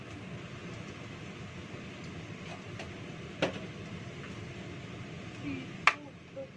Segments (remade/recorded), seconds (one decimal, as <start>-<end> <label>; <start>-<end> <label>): 0.0-6.6 recorded